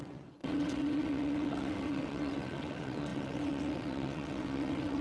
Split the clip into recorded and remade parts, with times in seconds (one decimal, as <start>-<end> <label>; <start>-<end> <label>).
0.0-5.0 remade